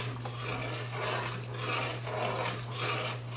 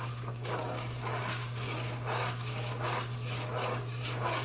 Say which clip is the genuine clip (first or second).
first